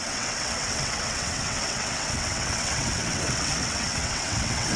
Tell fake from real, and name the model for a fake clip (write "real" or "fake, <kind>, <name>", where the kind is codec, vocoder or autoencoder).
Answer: fake, vocoder, WaveNeXt